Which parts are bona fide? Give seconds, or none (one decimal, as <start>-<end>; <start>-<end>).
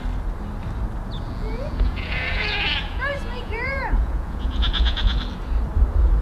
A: 0.0-1.5; 5.2-6.2